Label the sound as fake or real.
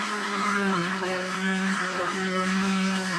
fake